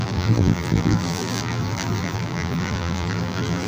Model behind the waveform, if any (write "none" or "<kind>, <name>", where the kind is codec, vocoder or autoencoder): vocoder, BigVGAN v2